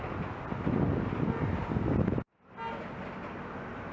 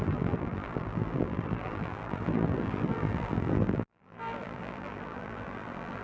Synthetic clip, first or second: second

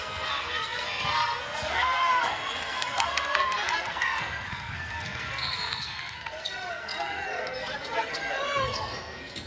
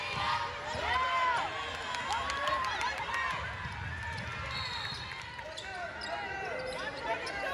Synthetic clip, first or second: first